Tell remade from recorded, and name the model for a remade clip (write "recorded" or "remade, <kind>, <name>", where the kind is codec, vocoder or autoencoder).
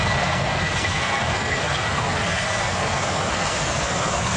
remade, codec, SNAC